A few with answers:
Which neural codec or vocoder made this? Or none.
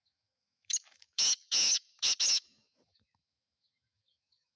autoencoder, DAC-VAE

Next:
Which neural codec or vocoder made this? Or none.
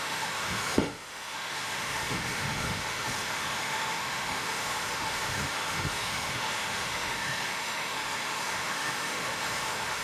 autoencoder, DAC-VAE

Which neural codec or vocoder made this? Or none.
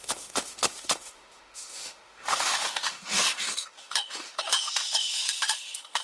autoencoder, DAC-VAE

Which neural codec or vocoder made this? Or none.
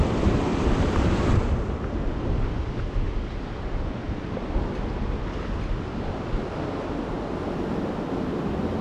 none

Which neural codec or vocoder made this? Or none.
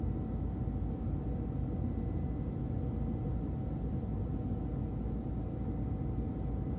none